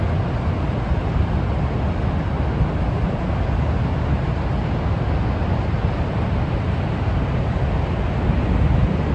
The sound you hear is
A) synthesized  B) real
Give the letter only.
B